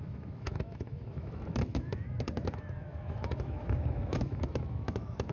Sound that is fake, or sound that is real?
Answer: fake